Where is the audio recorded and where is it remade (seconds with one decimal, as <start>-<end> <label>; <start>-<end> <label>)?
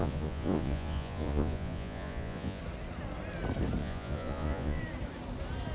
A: 0.0-2.6 remade; 2.6-3.8 recorded; 3.8-4.8 remade; 4.8-5.7 recorded